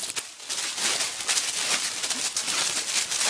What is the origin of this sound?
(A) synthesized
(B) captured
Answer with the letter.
A